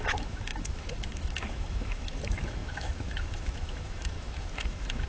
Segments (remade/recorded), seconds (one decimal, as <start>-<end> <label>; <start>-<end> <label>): 0.0-5.1 remade